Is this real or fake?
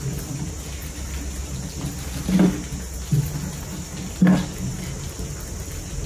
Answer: real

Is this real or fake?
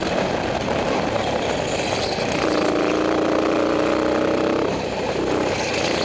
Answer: real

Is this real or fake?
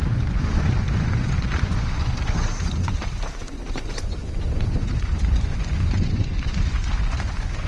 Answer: fake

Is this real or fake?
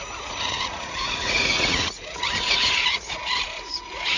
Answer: fake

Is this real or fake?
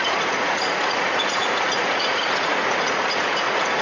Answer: fake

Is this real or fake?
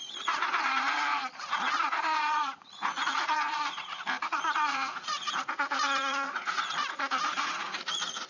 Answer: fake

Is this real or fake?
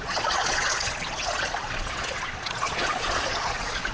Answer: fake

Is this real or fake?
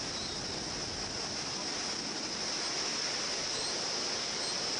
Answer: real